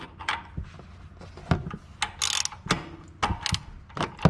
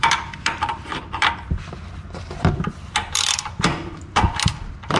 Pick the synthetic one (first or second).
second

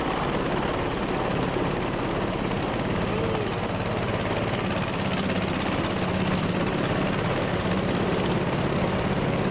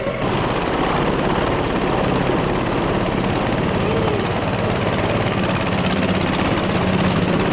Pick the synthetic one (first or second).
second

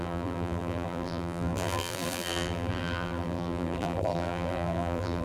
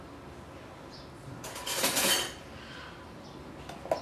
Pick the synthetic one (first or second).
first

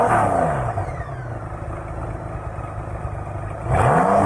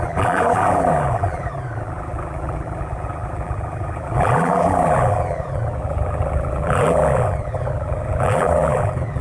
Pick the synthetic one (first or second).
second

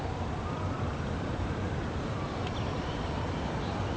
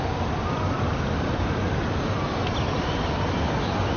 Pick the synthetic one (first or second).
first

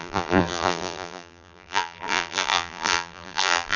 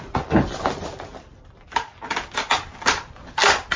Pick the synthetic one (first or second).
first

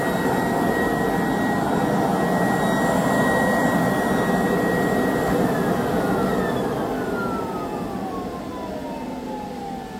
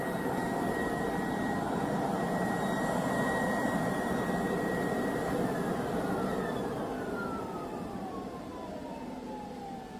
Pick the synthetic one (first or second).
second